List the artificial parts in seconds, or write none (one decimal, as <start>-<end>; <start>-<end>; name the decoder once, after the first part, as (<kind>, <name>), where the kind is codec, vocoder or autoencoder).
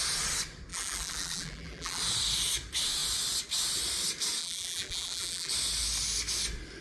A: 0.7-2.0 (vocoder, BigVGAN v2); 4.4-5.5